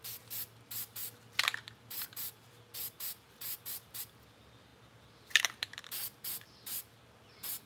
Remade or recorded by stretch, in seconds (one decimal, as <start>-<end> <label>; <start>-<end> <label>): 0.0-7.7 recorded